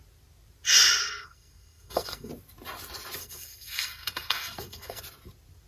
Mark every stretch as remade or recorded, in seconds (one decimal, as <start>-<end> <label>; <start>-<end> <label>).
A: 0.0-1.0 recorded; 1.0-2.3 remade; 2.3-3.2 recorded; 3.2-5.0 remade; 5.0-5.7 recorded

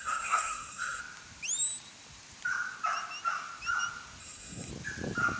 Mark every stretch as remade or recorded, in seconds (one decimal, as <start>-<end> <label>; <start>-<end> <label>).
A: 0.0-1.0 remade; 1.0-4.2 recorded; 4.2-4.7 remade; 4.7-5.4 recorded

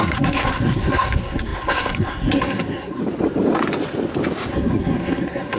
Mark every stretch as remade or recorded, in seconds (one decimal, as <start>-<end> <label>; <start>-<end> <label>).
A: 0.0-3.0 remade; 3.0-4.5 recorded; 4.5-5.6 remade

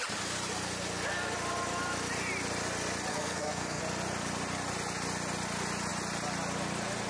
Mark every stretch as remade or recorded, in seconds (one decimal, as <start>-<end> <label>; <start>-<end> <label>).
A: 0.0-3.1 recorded; 3.1-3.8 remade; 3.8-7.1 recorded

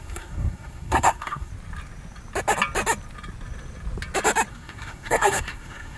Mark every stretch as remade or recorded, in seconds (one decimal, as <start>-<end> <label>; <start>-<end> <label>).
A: 0.0-1.5 remade; 1.5-4.5 recorded; 4.5-6.0 remade